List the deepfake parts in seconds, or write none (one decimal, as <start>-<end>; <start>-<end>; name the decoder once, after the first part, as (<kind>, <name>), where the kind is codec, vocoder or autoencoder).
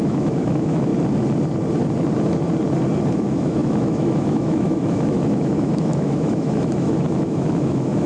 0.0-0.9 (autoencoder, DAC-VAE); 3.1-8.1